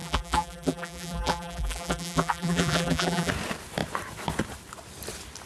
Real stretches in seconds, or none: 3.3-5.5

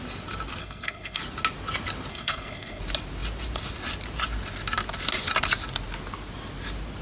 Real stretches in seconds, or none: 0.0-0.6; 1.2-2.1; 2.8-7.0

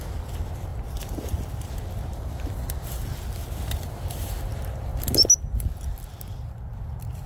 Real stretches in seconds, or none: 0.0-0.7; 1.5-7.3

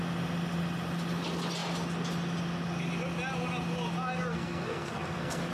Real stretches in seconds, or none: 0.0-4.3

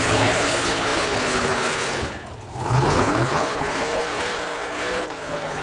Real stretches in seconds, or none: none

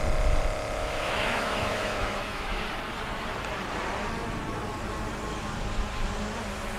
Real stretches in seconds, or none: 0.0-0.8; 2.6-6.8